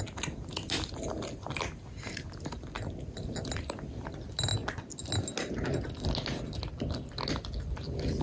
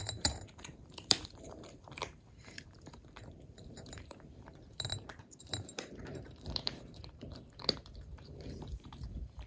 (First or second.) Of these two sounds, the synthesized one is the second